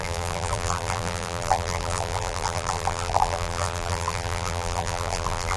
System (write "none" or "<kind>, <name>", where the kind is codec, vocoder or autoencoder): vocoder, BigVGAN v2